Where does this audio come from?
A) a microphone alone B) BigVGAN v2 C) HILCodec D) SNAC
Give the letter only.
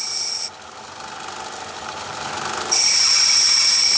A